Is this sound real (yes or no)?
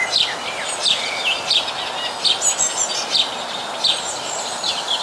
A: yes